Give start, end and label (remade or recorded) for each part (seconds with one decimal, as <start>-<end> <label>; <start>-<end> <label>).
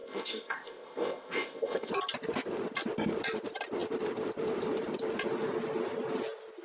0.0-1.9 remade; 1.9-6.6 recorded